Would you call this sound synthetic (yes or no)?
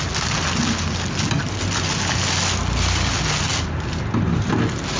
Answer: no